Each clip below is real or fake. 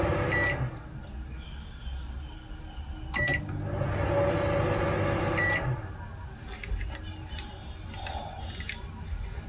real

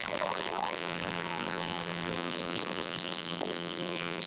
fake